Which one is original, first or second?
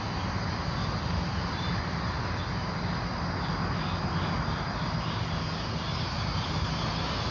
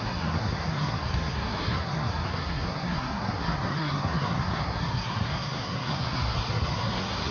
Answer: first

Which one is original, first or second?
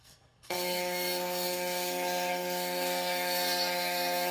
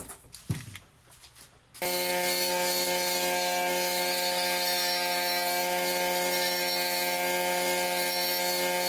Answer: second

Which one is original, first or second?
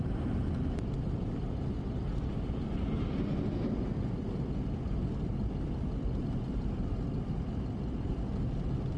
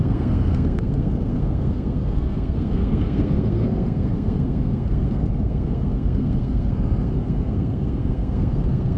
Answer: first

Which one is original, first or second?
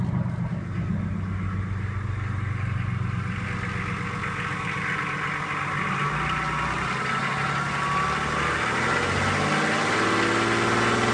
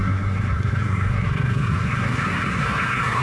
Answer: first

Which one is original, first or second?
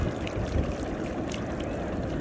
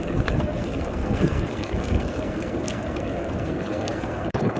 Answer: first